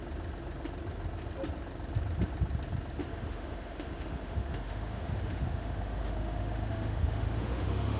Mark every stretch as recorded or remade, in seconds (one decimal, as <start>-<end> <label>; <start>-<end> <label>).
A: 0.0-3.0 recorded; 3.0-8.0 remade